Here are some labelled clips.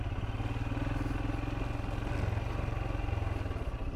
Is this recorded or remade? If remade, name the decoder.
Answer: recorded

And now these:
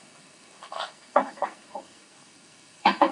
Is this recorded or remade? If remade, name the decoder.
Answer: remade, codec, SNAC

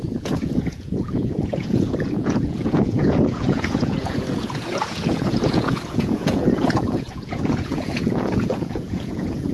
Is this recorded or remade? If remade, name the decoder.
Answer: remade, vocoder, Vocos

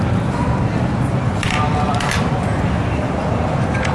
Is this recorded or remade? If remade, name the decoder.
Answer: remade, vocoder, BigVGAN v2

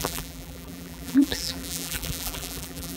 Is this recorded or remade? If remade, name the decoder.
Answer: remade, vocoder, BigVGAN v2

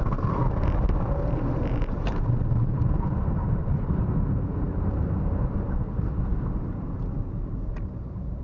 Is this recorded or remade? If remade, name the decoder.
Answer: remade, vocoder, BigVGAN v2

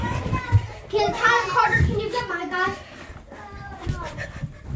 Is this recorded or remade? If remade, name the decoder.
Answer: recorded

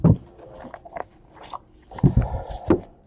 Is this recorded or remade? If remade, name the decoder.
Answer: remade, vocoder, BigVGAN v2